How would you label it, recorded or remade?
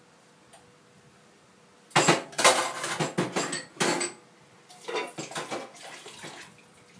recorded